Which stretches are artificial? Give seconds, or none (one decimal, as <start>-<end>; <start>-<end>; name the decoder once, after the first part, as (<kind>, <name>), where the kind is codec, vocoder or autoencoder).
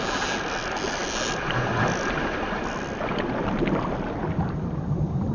none